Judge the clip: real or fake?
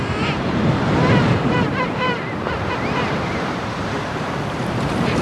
fake